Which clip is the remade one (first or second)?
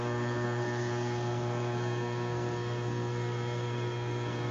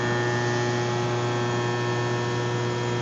first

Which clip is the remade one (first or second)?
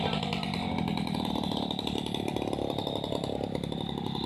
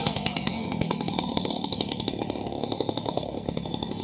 second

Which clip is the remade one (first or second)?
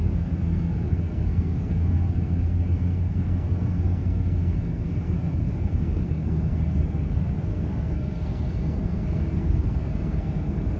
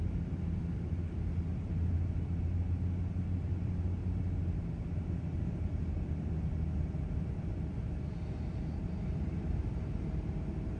first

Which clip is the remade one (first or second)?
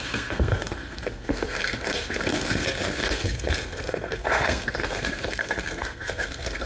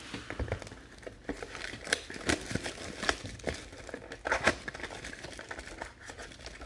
first